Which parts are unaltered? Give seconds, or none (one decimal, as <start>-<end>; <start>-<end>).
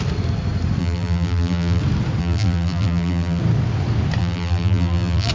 0.0-0.8; 1.8-2.2; 3.4-4.2